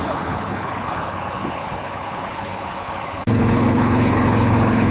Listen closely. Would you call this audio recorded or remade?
remade